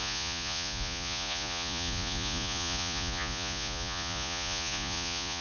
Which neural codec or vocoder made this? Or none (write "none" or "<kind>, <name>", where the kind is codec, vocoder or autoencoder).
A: vocoder, Vocos